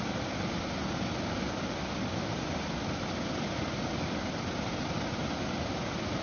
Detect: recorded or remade recorded